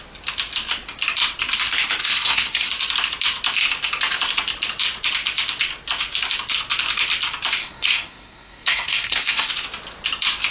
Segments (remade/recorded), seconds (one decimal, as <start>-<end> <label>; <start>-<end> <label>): 0.0-2.0 recorded; 2.0-2.7 remade; 2.7-7.6 recorded; 7.6-9.5 remade; 9.5-10.5 recorded

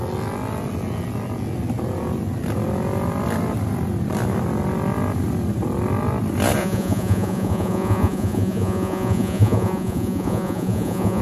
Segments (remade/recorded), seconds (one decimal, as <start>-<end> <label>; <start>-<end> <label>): 0.0-6.6 recorded; 6.6-11.2 remade

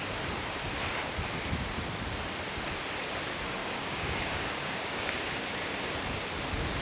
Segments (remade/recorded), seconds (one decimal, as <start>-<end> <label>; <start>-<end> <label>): 0.0-3.6 recorded; 3.6-5.4 remade; 5.4-6.8 recorded

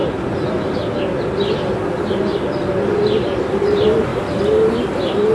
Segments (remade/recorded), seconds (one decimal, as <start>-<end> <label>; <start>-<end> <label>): 0.0-4.1 recorded; 4.1-4.7 remade; 4.7-5.3 recorded